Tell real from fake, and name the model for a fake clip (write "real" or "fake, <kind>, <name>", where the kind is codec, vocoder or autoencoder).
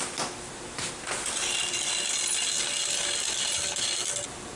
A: real